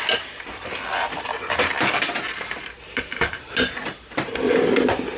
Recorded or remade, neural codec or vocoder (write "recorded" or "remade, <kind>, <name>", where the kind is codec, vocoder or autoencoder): recorded